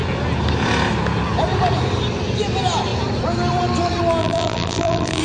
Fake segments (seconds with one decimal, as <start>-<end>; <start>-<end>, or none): 4.2-5.2

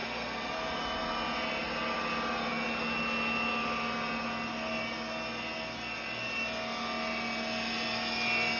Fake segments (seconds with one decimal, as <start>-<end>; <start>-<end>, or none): 0.0-0.5

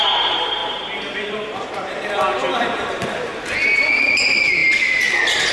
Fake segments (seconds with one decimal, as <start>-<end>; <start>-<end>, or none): 0.0-3.3; 4.0-5.5

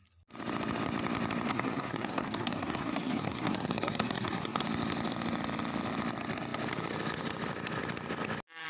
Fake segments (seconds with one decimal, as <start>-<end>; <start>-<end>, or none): 1.5-4.6

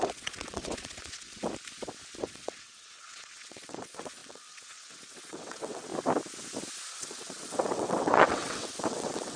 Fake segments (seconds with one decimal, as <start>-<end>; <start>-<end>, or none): 0.0-1.4; 2.2-5.9; 6.9-9.4

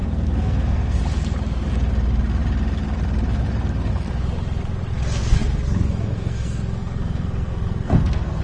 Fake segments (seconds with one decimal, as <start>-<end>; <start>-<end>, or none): 0.0-1.0; 5.2-8.4

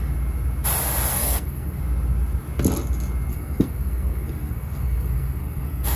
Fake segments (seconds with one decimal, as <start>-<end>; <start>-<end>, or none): 1.1-1.8; 3.3-6.0